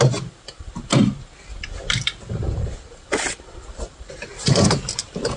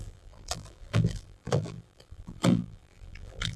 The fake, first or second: second